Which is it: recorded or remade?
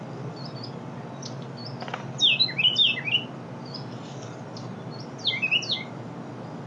recorded